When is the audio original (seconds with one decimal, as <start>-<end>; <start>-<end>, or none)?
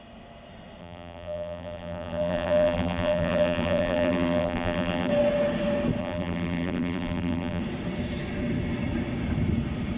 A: 0.0-0.8; 5.1-6.0; 7.6-10.0